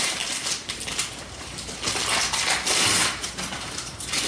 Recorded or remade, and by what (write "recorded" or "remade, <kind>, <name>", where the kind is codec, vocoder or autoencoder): recorded